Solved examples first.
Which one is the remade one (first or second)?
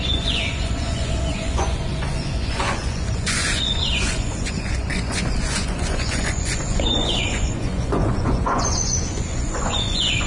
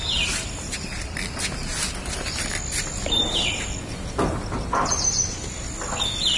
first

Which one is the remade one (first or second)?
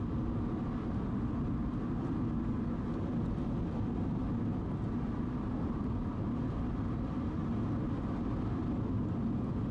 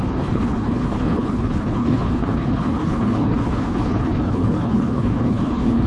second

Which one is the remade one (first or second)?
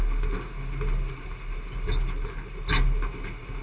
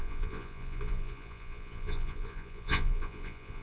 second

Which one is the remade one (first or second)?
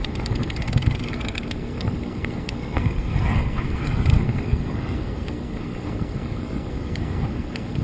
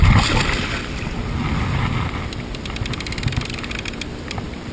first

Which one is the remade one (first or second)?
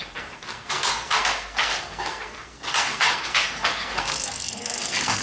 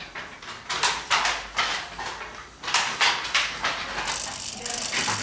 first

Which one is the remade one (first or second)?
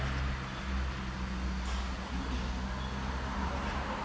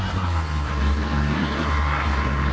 second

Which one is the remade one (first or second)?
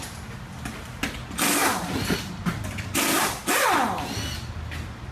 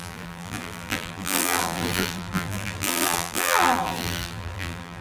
second